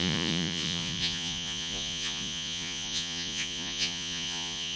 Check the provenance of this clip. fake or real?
fake